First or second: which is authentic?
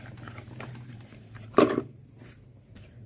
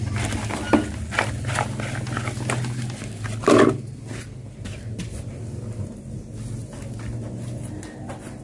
second